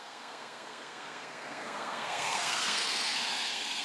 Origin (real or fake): fake